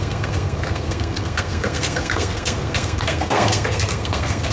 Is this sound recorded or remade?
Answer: remade